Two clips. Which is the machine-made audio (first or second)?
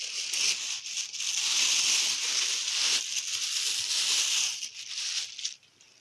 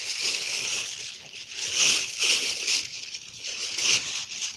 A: second